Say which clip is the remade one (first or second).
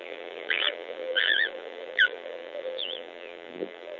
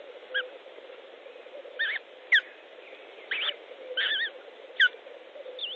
first